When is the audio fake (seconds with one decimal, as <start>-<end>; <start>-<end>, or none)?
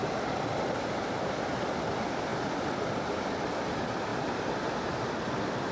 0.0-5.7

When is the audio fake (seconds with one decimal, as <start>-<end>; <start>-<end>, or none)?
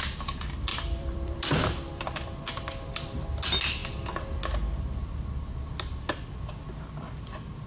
0.7-2.4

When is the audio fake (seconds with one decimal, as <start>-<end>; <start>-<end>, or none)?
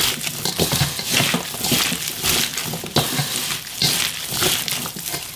none